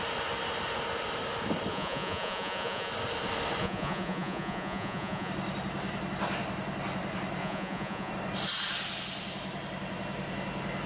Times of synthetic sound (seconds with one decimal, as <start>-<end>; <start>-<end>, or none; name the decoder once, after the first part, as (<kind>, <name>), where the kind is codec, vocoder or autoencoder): 1.7-2.9 (vocoder, Vocos); 3.6-5.3; 7.4-8.1